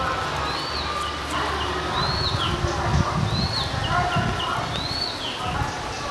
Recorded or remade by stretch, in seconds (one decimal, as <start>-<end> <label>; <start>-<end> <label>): 0.0-6.1 recorded